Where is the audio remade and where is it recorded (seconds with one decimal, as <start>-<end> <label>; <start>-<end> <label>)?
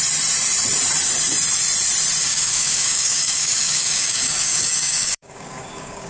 0.0-2.2 recorded; 2.2-6.1 remade